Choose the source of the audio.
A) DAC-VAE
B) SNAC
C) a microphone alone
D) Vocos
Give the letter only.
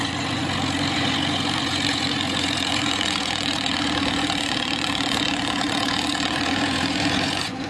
D